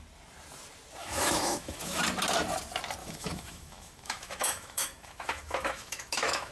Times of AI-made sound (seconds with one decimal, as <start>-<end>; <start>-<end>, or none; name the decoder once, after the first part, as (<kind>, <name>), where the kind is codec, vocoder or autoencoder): 1.0-2.0 (autoencoder, DAC-VAE); 3.0-6.5